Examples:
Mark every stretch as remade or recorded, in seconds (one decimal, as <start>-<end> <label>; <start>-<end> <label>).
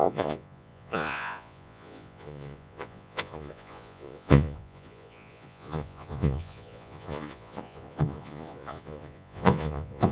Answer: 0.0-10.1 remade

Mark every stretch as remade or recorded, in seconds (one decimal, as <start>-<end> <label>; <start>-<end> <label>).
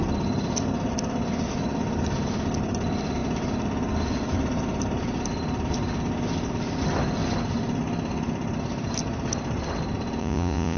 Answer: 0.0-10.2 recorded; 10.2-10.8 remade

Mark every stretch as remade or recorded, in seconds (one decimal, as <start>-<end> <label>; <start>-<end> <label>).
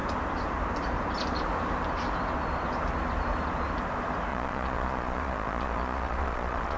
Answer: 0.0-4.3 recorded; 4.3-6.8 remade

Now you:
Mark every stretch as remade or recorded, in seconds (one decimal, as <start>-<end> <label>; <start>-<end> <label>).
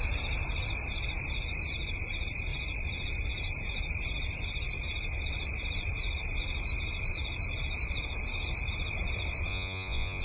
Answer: 0.0-9.5 recorded; 9.5-10.2 remade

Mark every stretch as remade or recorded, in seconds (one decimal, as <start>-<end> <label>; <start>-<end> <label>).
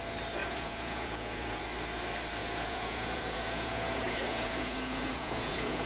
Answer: 0.0-0.4 recorded; 0.4-1.6 remade; 1.6-2.4 recorded; 2.4-5.9 remade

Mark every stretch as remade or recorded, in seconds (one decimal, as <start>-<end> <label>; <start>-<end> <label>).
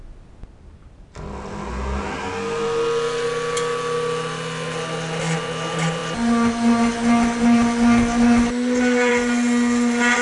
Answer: 0.0-10.2 recorded